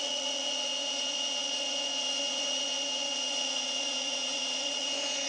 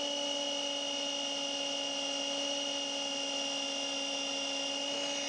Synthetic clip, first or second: first